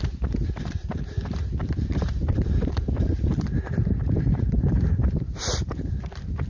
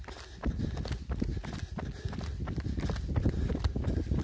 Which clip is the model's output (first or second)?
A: first